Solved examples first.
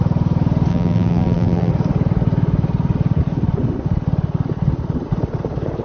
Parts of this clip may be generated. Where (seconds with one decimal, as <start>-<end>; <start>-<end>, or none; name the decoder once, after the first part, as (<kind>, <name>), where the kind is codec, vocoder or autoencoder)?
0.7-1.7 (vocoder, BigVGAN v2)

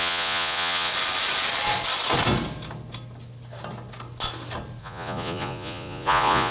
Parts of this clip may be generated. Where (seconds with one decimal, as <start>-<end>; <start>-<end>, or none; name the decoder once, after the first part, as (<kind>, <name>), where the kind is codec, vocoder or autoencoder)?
0.0-0.9 (vocoder, Vocos); 4.8-6.5

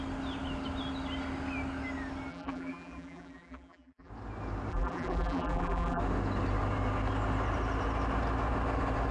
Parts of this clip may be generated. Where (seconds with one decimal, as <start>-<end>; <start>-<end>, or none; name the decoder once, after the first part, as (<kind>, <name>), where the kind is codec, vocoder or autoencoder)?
2.3-4.1 (vocoder, BigVGAN v2); 4.7-6.0

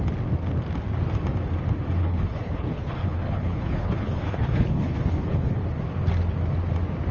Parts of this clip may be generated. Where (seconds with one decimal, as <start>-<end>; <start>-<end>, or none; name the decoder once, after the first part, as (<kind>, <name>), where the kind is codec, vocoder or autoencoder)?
2.0-5.6 (codec, HILCodec)

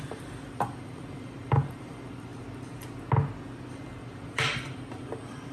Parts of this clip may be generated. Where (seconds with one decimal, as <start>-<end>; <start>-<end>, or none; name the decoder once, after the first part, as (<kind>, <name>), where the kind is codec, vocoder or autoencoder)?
0.0-2.3 (vocoder, BigVGAN v2); 3.6-5.5